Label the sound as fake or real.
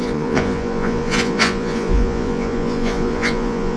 fake